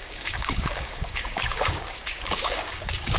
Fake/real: fake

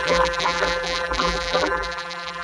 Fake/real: fake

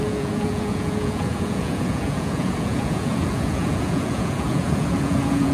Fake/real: fake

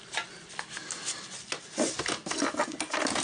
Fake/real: real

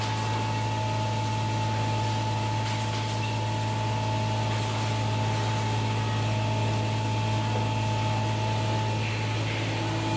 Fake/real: real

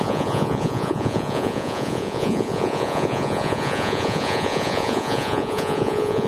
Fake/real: fake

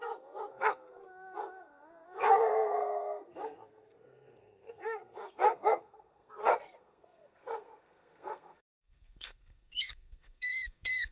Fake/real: fake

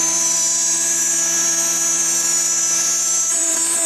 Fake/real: fake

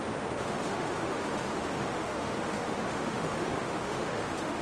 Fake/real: fake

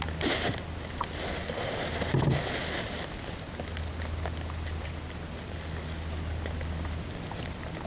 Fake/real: real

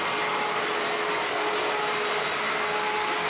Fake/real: real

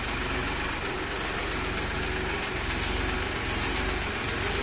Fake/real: real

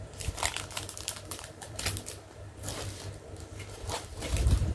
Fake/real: fake